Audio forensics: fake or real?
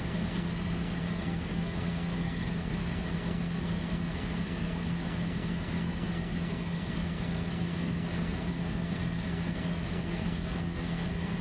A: fake